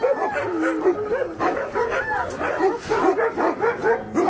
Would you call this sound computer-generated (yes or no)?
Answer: no